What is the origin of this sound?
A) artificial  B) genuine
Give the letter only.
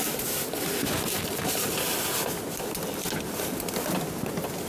B